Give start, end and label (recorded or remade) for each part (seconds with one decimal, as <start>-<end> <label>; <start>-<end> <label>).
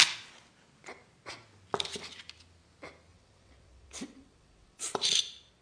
0.0-3.1 recorded; 3.1-5.0 remade; 5.0-5.6 recorded